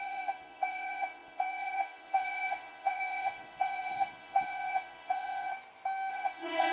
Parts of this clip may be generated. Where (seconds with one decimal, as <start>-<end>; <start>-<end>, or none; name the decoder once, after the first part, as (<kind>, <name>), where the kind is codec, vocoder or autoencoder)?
0.0-5.5 (vocoder, Vocos); 6.1-6.7